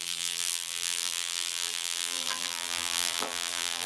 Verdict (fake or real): fake